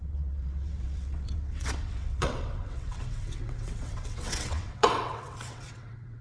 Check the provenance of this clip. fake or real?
fake